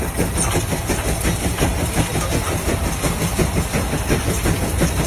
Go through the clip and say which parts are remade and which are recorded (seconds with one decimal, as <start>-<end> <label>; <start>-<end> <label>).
0.0-5.1 recorded